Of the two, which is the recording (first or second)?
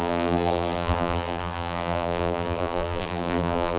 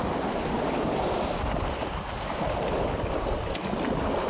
second